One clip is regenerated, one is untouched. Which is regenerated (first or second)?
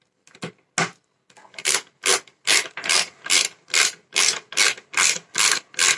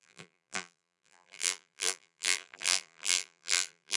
second